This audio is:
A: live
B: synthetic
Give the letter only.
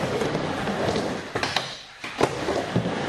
A